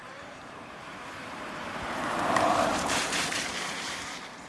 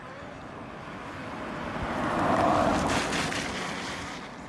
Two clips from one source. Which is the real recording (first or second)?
second